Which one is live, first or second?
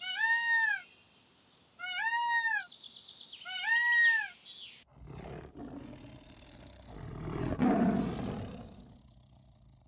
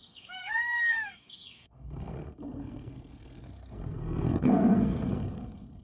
first